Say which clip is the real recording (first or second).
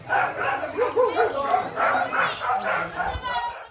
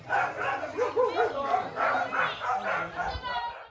second